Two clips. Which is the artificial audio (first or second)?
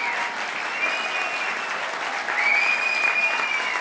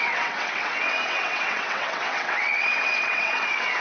second